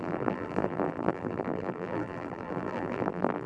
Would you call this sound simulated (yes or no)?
yes